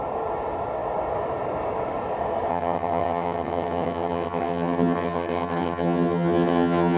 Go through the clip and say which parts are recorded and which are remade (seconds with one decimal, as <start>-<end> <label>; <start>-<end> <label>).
0.0-2.5 recorded; 2.5-7.0 remade